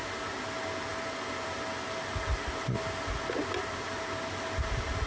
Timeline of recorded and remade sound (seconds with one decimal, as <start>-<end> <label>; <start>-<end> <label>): 0.0-0.9 recorded; 0.9-4.0 remade; 4.0-5.1 recorded